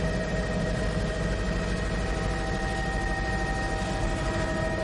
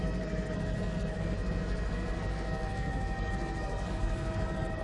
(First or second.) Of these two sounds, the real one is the first